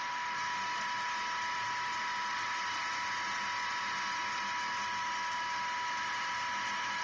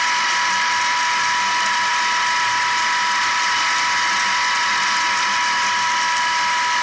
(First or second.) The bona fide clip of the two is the first